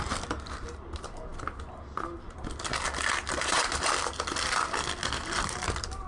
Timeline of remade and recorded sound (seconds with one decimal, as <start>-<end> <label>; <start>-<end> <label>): 0.0-6.1 remade